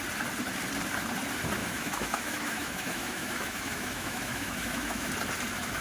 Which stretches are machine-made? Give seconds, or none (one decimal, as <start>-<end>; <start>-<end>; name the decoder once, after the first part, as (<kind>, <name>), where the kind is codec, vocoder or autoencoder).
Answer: 1.6-5.1 (autoencoder, DAC-VAE)